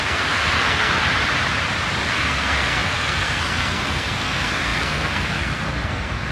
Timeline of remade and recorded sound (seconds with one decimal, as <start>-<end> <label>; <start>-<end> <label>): 0.0-1.0 remade; 1.0-2.1 recorded; 2.1-6.3 remade